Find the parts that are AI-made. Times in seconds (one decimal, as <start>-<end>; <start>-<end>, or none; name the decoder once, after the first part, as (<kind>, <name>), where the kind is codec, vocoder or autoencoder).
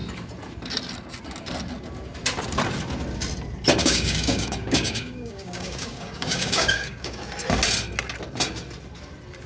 3.8-7.3 (codec, DAC)